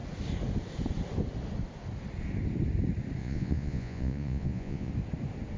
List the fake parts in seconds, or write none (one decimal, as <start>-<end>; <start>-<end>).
3.2-4.9